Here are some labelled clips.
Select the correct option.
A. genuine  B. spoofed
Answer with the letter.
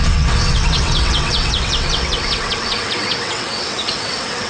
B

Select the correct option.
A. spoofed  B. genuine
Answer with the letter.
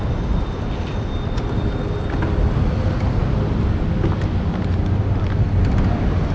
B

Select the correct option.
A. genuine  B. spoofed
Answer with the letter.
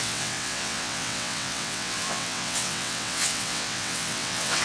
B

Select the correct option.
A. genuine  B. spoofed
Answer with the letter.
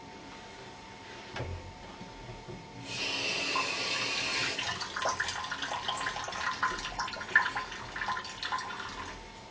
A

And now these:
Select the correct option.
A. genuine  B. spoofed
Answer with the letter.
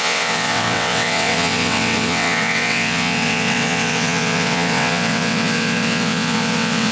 B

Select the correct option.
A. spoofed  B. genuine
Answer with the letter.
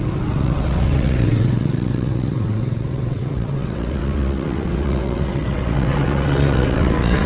A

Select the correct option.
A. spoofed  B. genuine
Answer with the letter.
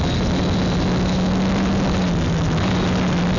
B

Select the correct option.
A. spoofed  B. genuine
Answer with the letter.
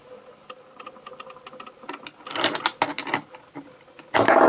B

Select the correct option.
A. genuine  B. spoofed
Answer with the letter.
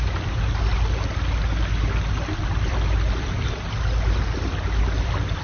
A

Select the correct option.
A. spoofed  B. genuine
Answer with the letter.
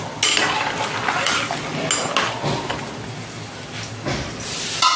B